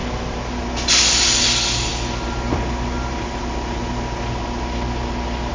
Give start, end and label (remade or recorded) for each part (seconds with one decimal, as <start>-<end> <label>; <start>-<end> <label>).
0.0-5.5 recorded